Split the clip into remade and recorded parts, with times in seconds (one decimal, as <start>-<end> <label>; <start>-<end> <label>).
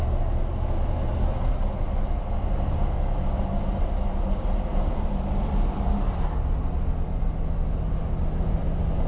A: 0.0-9.1 recorded